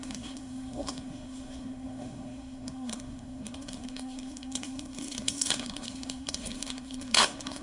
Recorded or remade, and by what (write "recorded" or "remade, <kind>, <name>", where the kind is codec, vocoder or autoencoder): remade, codec, SNAC